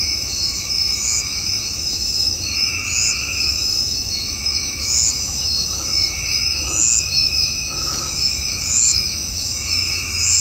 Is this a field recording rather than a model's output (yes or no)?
no